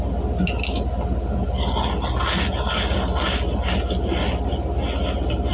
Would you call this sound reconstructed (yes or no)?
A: no